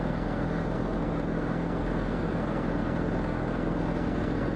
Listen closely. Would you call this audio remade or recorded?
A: remade